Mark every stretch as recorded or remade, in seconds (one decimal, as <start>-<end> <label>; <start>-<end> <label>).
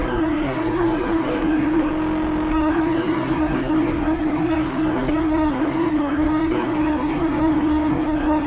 0.0-1.9 remade; 1.9-2.5 recorded; 2.5-8.5 remade